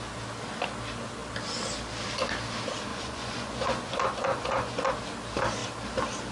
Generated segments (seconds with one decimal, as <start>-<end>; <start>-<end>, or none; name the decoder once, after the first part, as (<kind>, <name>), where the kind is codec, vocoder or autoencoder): 2.9-4.9 (vocoder, Vocos)

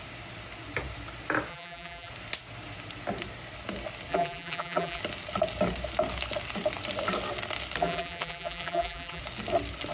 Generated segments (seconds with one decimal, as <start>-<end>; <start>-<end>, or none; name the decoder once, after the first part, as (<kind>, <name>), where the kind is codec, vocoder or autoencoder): 1.5-2.1 (vocoder, BigVGAN v2); 4.1-5.0; 7.8-9.2

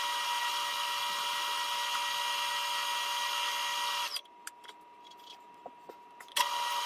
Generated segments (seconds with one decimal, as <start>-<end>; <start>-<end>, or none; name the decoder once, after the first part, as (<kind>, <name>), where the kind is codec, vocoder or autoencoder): none

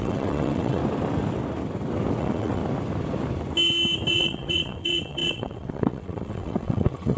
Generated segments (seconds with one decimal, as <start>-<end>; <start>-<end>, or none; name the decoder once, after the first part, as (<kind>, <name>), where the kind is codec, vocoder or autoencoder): 0.0-0.8 (vocoder, WaveNeXt); 2.2-2.6; 4.1-7.2

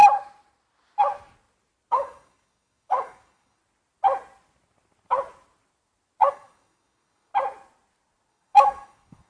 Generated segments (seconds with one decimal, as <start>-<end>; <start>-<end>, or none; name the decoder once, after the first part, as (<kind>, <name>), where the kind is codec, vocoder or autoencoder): 1.9-3.6 (codec, DAC); 6.3-7.3; 8.3-9.3

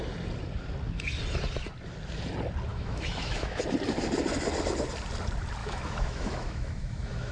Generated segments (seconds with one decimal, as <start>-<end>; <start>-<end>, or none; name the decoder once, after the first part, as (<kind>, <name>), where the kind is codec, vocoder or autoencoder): 2.7-3.6 (autoencoder, DAC-VAE); 5.6-7.3

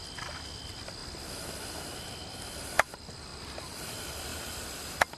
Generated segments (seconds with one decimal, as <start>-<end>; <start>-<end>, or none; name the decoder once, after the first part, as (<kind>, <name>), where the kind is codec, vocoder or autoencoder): 3.3-3.9 (vocoder, BigVGAN v2)